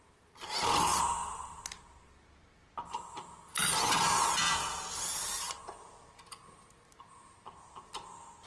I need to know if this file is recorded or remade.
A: recorded